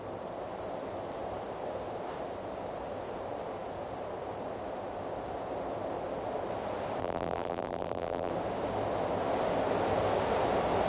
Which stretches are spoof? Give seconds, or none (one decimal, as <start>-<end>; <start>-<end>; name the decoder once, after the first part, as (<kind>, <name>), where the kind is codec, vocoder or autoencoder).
7.0-8.3 (vocoder, BigVGAN v2)

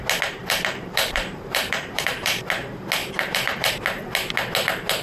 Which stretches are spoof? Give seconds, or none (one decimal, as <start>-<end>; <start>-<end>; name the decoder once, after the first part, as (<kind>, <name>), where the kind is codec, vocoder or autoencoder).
0.4-2.4 (vocoder, BigVGAN v2); 3.0-3.7